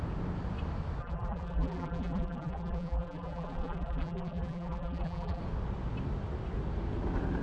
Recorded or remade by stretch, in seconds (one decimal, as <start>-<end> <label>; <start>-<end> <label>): 0.0-1.0 recorded; 1.0-5.4 remade; 5.4-7.4 recorded